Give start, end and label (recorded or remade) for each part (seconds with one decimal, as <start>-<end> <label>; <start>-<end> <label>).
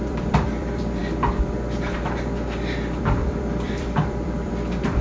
0.0-1.0 remade; 1.0-3.0 recorded; 3.0-5.0 remade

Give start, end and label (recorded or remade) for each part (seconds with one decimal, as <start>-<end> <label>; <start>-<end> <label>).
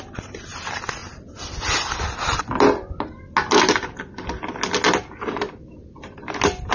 0.0-6.7 recorded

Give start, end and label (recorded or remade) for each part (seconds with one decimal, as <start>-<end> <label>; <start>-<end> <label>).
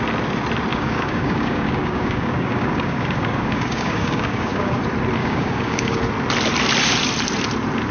0.0-0.7 recorded; 0.7-4.8 remade; 4.8-5.2 recorded; 5.2-6.0 remade; 6.0-7.9 recorded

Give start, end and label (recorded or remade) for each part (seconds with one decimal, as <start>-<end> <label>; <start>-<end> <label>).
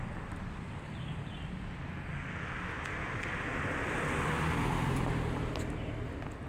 0.0-6.5 recorded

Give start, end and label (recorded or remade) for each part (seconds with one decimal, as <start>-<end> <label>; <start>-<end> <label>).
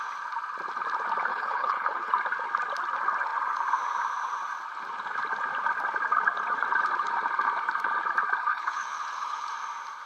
0.0-1.3 recorded; 1.3-2.1 remade; 2.1-8.5 recorded; 8.5-9.5 remade; 9.5-10.1 recorded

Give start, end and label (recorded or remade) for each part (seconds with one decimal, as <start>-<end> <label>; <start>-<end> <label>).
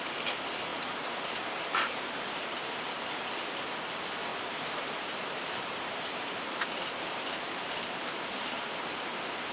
0.0-0.7 recorded; 0.7-2.7 remade; 2.7-4.3 recorded; 4.3-9.5 remade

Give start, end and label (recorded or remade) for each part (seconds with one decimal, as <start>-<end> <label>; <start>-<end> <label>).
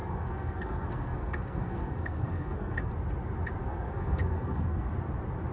0.0-2.9 remade; 2.9-3.6 recorded; 3.6-4.9 remade; 4.9-5.5 recorded